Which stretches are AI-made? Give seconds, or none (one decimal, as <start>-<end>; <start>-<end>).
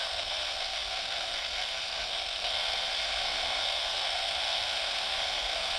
0.0-5.8